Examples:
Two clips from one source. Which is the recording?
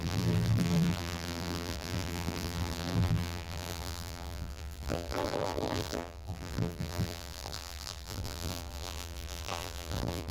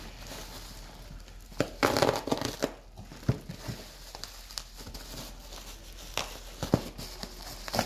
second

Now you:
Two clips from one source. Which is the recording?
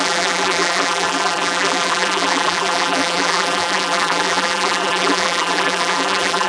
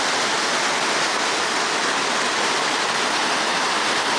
second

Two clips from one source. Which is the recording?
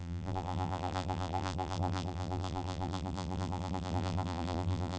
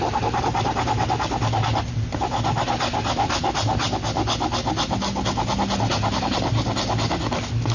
second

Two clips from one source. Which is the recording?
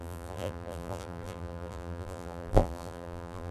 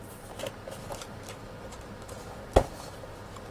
second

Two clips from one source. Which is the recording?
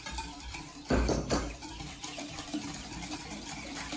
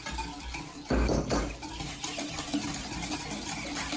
second